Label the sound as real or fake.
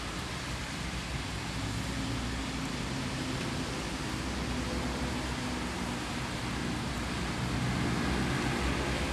real